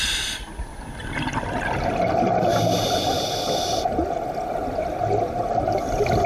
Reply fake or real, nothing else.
real